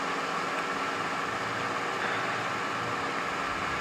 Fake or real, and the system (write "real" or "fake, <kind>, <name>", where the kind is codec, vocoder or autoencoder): real